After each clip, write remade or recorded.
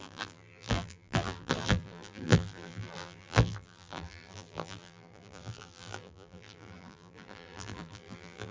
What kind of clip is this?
remade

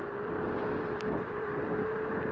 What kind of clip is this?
remade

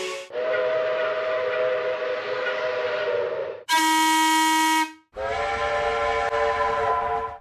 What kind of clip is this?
recorded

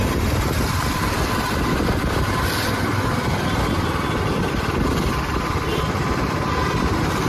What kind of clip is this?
remade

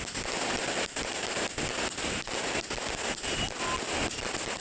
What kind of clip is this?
recorded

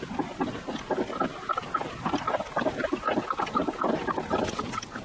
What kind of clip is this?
recorded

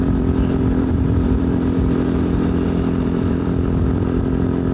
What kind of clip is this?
remade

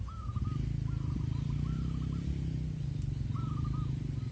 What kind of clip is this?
recorded